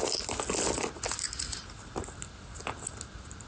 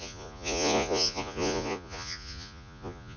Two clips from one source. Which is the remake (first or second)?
second